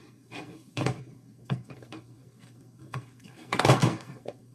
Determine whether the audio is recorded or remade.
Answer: remade